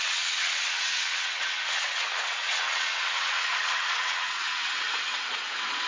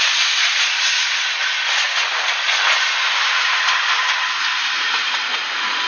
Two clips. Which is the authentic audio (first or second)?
second